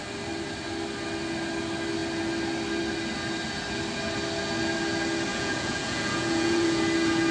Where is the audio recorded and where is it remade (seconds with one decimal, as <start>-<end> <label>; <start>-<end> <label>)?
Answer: 0.0-5.3 recorded; 5.3-6.8 remade; 6.8-7.3 recorded